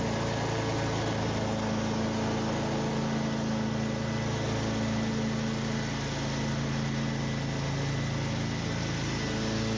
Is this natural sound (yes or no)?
yes